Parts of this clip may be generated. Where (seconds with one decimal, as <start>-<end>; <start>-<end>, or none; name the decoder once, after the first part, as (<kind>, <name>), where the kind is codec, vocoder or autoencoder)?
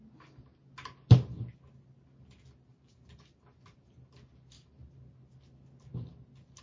none